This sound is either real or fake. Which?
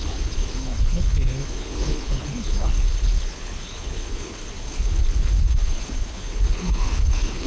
fake